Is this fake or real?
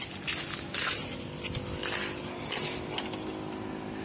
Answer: real